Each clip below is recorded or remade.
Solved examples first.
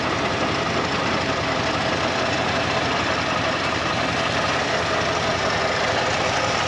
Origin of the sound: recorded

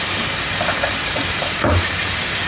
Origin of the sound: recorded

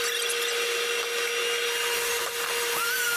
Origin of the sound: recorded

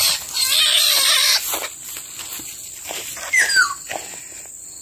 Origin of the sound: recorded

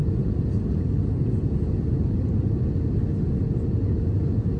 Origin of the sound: recorded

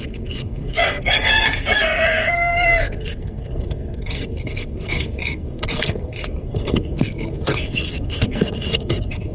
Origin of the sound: remade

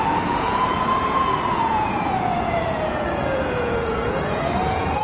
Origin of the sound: remade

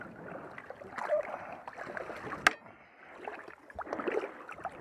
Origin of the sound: recorded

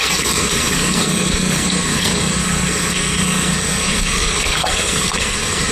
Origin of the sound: remade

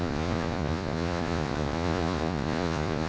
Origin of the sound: remade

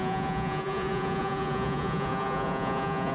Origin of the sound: remade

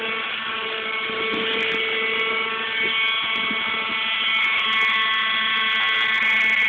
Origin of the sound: recorded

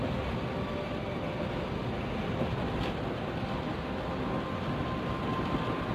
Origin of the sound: recorded